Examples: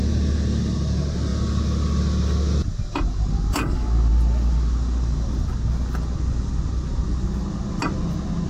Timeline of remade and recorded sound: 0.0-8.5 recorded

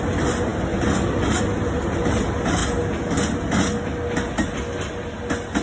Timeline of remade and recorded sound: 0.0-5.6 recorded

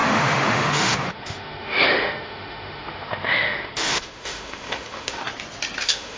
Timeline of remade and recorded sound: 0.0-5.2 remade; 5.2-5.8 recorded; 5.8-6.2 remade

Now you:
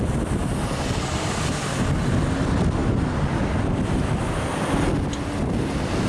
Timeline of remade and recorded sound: 0.0-6.1 recorded

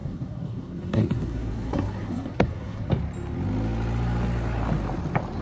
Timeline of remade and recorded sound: 0.0-2.9 remade; 2.9-5.4 recorded

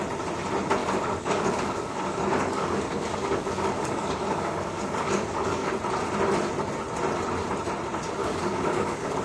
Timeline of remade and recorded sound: 0.0-0.8 recorded; 0.8-5.7 remade; 5.7-8.2 recorded; 8.2-9.2 remade